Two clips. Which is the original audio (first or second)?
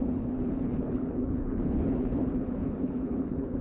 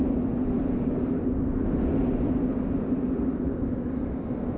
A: second